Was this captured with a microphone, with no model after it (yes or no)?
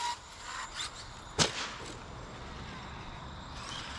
yes